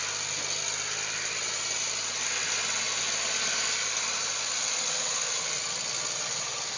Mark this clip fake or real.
real